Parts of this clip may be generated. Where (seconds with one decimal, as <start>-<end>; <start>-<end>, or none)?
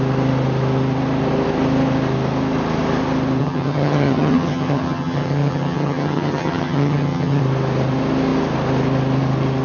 3.4-7.4